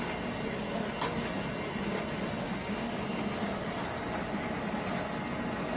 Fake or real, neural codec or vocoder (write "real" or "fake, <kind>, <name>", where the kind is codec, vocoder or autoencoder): real